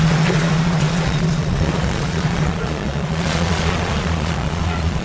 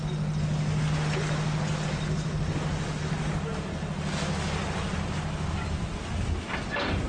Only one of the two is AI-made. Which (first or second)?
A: first